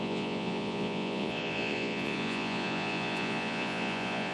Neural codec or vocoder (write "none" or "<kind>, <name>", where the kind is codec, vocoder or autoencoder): vocoder, Vocos